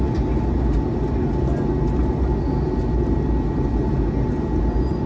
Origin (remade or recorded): recorded